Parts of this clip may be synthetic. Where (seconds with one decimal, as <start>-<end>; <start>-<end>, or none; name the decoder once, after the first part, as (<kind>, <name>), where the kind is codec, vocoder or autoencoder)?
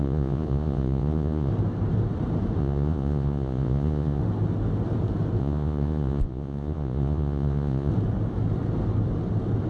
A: 0.0-1.5 (vocoder, Vocos); 2.6-4.2; 5.4-7.9